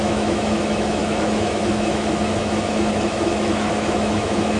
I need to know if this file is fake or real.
fake